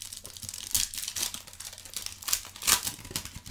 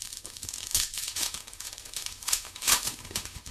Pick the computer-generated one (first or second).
second